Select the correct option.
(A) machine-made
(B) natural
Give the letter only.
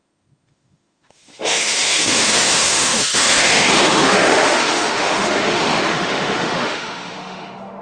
A